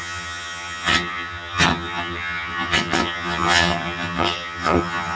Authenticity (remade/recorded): remade